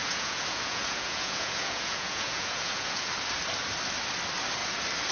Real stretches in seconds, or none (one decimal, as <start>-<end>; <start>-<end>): 3.1-5.1